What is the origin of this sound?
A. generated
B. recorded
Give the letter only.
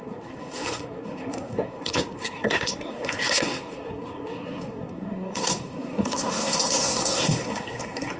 A